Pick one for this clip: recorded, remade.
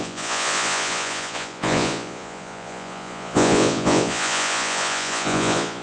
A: remade